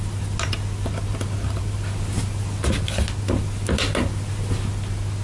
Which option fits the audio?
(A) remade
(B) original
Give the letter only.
B